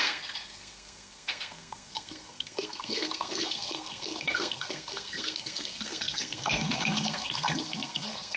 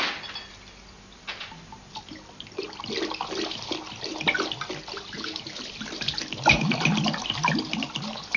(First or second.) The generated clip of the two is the first